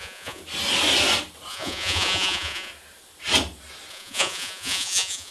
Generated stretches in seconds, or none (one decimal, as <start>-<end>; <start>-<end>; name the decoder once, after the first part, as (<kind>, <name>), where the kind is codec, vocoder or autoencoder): 0.0-0.4 (vocoder, Vocos); 1.5-2.7; 3.9-5.3